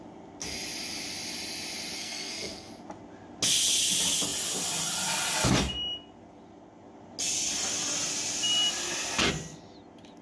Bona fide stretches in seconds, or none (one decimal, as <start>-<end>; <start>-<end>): 0.0-2.0; 2.7-10.2